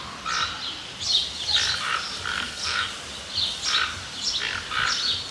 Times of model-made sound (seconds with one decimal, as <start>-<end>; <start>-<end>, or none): 2.3-2.9